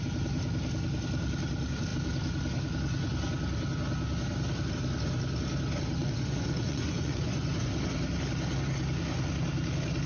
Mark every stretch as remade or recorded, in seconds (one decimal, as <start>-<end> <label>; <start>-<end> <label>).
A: 0.0-6.0 recorded; 6.0-7.7 remade; 7.7-10.1 recorded

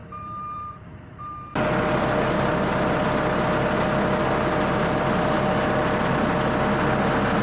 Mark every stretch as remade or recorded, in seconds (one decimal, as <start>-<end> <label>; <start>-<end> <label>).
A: 0.0-1.2 remade; 1.2-7.4 recorded

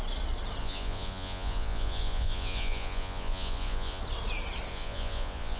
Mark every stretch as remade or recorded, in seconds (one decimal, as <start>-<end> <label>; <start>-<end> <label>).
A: 0.0-0.6 recorded; 0.6-4.0 remade; 4.0-4.7 recorded; 4.7-5.6 remade